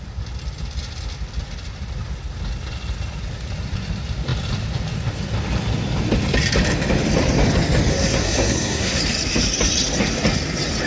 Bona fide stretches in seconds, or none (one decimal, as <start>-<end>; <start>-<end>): 0.0-7.9; 9.0-10.9